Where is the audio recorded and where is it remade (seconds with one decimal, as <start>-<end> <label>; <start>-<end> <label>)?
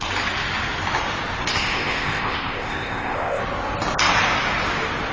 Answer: 0.0-1.5 recorded; 1.5-3.4 remade; 3.4-5.1 recorded